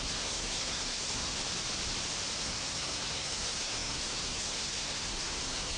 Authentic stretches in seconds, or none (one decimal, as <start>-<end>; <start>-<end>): 1.4-2.4